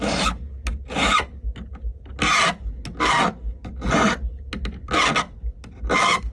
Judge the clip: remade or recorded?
recorded